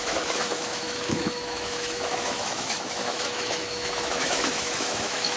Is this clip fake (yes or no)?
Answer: yes